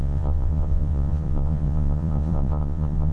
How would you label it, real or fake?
fake